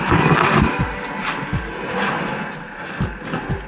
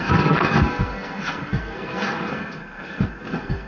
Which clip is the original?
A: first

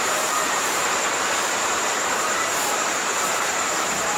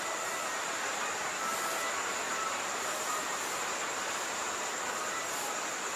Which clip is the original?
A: second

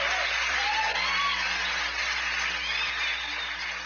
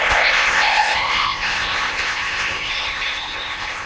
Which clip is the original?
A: first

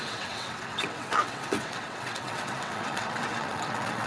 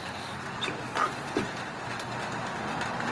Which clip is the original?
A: second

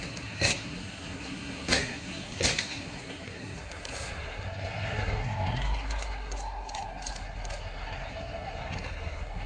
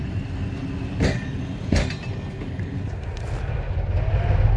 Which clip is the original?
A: second